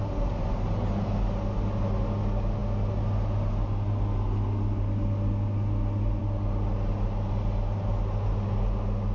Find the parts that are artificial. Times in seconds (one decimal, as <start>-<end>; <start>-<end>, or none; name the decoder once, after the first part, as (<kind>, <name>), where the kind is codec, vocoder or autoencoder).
none